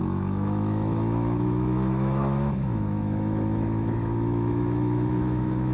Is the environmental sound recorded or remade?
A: remade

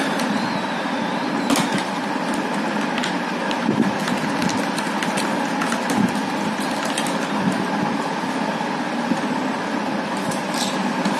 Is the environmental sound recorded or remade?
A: recorded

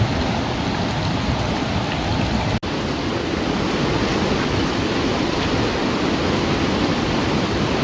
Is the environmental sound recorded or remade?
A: recorded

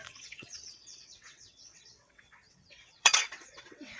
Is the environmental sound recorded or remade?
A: remade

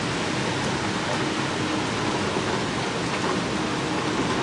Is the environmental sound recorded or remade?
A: recorded